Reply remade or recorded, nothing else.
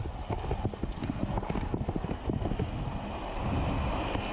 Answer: recorded